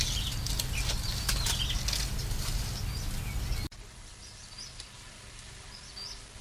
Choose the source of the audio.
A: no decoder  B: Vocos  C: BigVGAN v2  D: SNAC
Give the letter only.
A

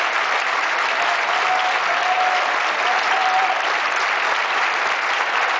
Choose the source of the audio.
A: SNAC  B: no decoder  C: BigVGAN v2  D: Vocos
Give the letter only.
B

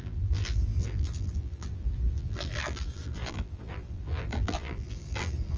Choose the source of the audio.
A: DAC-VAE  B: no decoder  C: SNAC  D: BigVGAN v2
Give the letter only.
D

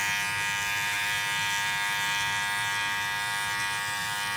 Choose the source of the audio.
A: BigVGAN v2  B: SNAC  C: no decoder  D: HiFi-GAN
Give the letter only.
C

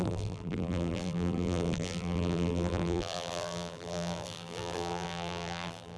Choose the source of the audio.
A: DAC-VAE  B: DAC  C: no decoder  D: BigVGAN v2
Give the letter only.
D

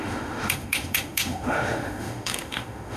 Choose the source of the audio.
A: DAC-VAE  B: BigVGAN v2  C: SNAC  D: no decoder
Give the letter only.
A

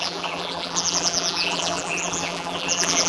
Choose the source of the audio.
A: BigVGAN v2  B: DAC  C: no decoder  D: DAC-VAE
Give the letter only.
A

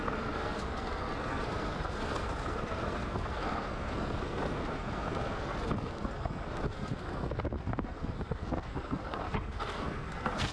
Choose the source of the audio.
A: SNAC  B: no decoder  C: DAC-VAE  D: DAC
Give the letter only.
A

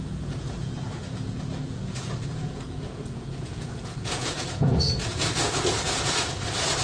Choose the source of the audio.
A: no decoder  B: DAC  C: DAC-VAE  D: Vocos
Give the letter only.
D